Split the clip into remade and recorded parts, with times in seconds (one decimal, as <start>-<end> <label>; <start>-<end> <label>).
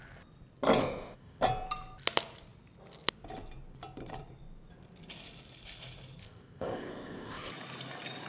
0.0-0.8 recorded; 0.8-1.4 remade; 1.4-6.2 recorded; 6.2-7.5 remade; 7.5-8.3 recorded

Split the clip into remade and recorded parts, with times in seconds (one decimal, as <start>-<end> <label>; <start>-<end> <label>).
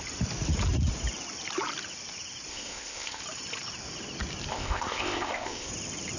0.0-2.5 recorded; 2.5-3.2 remade; 3.2-4.5 recorded; 4.5-5.7 remade; 5.7-6.2 recorded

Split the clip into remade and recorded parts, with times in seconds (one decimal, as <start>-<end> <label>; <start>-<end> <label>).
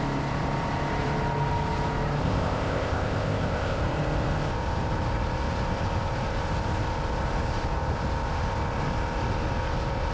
0.0-2.2 recorded; 2.2-3.8 remade; 3.8-10.1 recorded